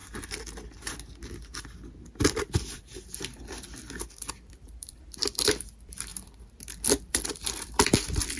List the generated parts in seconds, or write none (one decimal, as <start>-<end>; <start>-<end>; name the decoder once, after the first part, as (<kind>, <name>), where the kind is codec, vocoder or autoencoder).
4.3-6.1 (vocoder, BigVGAN v2); 7.1-8.4